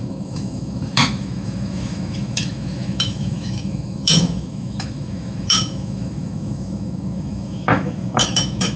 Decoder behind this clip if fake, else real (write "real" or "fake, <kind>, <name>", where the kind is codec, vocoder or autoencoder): fake, autoencoder, DAC-VAE